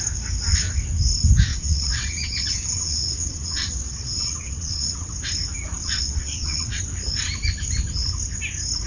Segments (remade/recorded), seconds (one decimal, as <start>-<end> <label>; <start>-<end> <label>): 0.0-1.5 recorded; 1.5-5.1 remade; 5.1-5.8 recorded; 5.8-6.8 remade; 6.8-8.9 recorded